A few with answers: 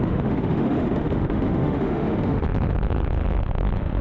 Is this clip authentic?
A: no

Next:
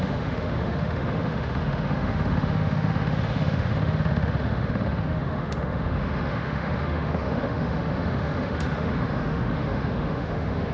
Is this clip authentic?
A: no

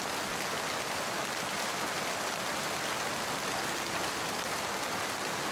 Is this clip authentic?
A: yes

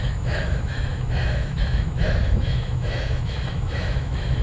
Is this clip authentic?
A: no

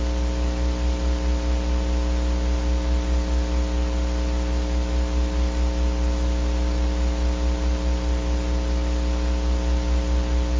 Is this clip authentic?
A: yes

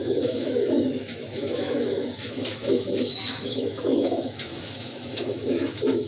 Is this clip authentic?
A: no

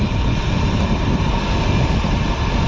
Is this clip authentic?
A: yes